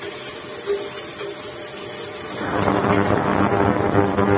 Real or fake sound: real